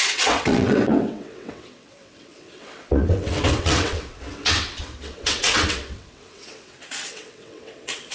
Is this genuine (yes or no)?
no